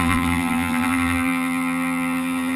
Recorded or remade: remade